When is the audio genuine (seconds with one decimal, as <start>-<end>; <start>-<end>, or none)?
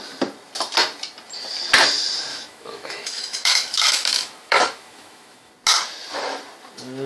0.0-2.3; 5.5-7.1